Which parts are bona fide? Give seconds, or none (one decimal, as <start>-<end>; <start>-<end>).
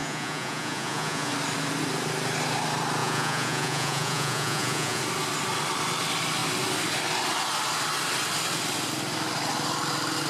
1.3-3.0; 5.0-10.3